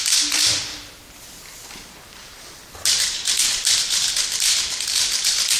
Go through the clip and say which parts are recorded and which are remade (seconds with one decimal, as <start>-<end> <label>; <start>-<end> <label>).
0.0-5.6 remade

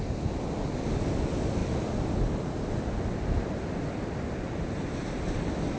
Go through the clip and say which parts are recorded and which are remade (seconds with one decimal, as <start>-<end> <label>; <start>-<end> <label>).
0.0-5.8 recorded